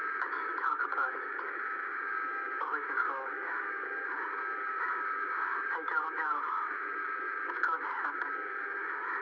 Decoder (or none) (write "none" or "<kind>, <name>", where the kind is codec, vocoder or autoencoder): autoencoder, DAC-VAE